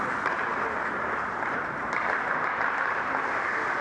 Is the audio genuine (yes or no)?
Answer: yes